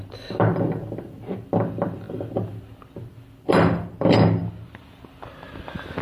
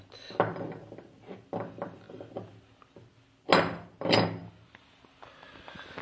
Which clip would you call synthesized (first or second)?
first